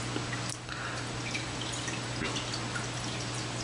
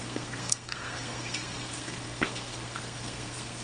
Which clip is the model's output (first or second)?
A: second